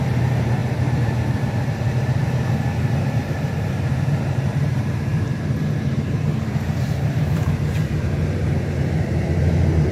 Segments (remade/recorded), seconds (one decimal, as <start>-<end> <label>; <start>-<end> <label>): 0.0-9.9 remade